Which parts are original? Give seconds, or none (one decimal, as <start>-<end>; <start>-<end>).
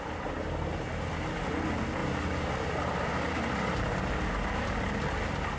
0.0-5.6